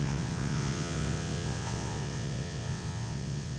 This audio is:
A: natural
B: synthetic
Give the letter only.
B